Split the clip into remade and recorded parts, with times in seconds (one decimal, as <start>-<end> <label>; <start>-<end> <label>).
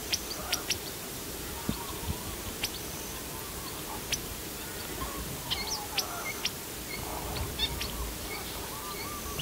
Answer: 0.0-2.2 remade; 2.2-9.4 recorded